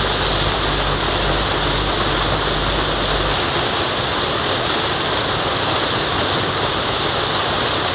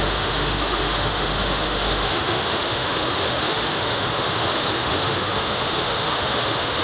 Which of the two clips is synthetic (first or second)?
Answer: second